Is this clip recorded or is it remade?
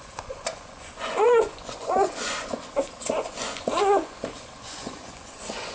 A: remade